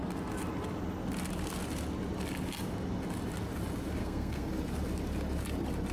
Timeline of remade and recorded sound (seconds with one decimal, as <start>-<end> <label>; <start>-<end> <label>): 0.0-4.0 recorded; 4.0-4.5 remade; 4.5-5.9 recorded